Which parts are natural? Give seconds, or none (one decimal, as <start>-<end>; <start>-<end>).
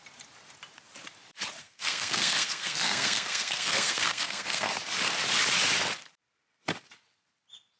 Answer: 0.0-1.6; 4.7-7.8